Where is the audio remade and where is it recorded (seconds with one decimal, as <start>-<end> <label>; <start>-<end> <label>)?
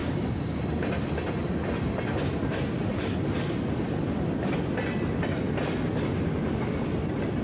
0.0-0.6 remade; 0.6-7.4 recorded